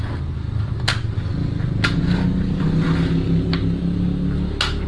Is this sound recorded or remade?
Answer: recorded